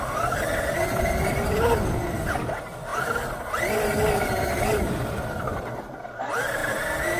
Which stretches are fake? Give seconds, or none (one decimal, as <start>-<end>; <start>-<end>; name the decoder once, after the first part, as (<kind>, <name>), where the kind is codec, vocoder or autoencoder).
5.5-6.0 (vocoder, BigVGAN v2)